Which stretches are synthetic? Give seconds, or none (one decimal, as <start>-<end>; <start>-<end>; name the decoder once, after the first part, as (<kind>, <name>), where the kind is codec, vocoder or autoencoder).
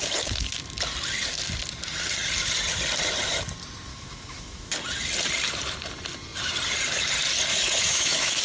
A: 3.9-4.7 (autoencoder, DAC-VAE); 7.5-8.4